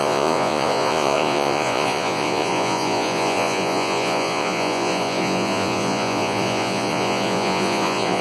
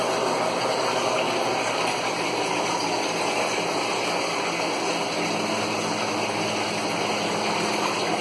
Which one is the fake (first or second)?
first